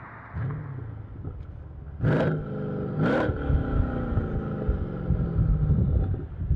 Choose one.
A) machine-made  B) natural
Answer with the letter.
B